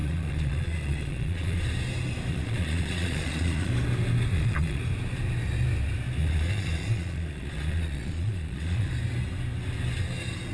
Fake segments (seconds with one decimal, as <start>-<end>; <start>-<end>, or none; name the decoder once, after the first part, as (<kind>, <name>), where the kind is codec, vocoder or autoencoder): 0.0-1.6 (vocoder, Vocos); 2.3-3.7; 4.3-4.8; 6.2-8.9